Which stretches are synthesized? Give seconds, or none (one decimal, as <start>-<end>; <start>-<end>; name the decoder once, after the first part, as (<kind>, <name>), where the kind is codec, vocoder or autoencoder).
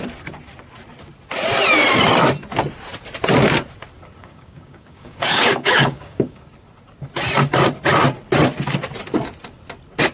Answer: 4.2-6.4 (codec, DAC)